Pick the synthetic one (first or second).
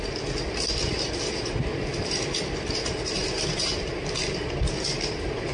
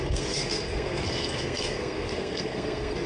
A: second